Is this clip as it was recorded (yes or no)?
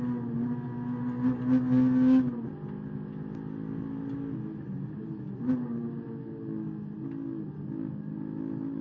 yes